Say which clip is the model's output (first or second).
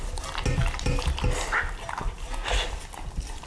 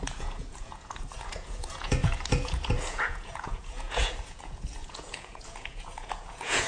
second